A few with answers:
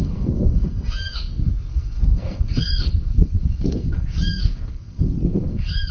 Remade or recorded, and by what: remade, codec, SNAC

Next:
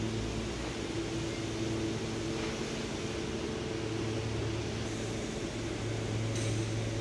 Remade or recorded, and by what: recorded